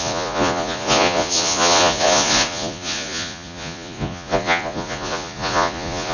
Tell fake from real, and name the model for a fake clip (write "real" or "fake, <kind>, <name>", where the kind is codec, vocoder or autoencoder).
fake, vocoder, Vocos